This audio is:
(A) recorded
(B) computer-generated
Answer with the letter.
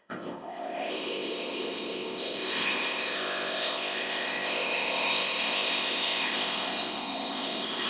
B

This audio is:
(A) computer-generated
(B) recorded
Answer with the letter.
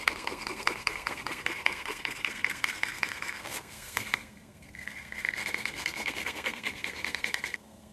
A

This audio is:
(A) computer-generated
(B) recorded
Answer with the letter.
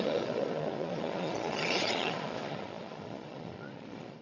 A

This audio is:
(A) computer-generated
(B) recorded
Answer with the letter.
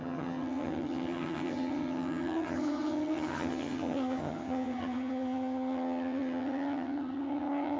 A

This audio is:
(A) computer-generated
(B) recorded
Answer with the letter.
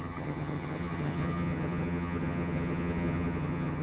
A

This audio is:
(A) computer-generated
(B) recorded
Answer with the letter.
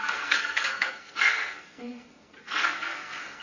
A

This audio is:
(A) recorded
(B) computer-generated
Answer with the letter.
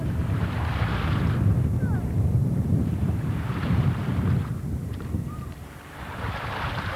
B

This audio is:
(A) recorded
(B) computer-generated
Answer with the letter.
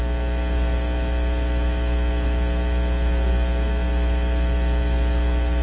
A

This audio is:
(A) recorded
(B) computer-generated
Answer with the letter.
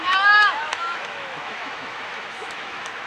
B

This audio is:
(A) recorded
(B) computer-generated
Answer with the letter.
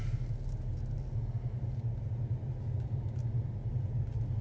A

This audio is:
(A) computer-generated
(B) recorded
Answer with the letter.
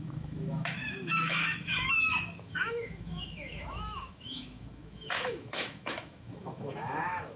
A